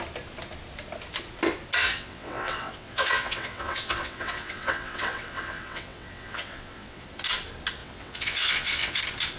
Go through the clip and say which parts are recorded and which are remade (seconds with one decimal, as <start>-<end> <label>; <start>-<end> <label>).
0.0-1.8 recorded; 1.8-7.0 remade; 7.0-7.8 recorded; 7.8-9.0 remade; 9.0-9.4 recorded